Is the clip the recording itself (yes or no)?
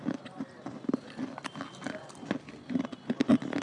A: yes